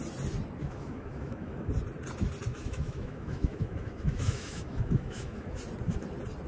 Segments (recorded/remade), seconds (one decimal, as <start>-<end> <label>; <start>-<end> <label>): 0.0-0.6 recorded; 0.6-1.7 remade; 1.7-2.5 recorded; 2.5-5.6 remade; 5.6-6.5 recorded